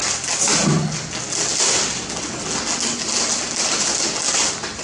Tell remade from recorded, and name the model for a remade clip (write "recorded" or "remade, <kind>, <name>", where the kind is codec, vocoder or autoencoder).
recorded